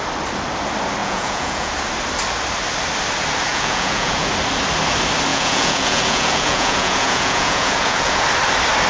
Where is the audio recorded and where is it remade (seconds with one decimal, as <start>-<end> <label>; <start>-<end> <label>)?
0.0-1.0 recorded; 1.0-1.7 remade; 1.7-3.5 recorded; 3.5-4.3 remade; 4.3-5.3 recorded; 5.3-8.2 remade; 8.2-8.9 recorded